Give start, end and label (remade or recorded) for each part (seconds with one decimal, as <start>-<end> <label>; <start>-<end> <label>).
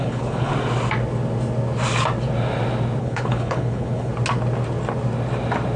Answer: 0.0-0.5 remade; 0.5-3.0 recorded; 3.0-4.1 remade; 4.1-5.8 recorded